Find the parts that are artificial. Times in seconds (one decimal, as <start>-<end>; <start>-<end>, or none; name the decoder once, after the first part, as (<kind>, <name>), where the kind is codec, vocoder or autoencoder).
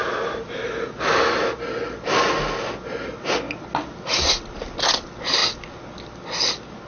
none